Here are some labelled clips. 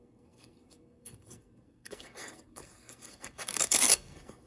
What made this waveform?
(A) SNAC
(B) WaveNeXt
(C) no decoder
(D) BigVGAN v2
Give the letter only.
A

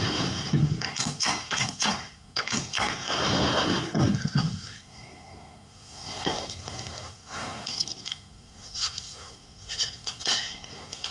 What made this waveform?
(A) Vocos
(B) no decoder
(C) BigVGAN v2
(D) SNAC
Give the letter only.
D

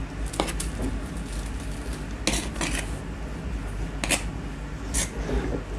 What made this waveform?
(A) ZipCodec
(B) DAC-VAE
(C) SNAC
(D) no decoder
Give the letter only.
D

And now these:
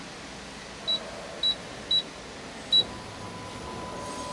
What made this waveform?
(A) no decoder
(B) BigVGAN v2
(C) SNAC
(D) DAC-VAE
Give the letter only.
A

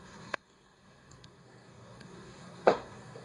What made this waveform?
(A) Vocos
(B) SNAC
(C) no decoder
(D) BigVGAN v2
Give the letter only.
B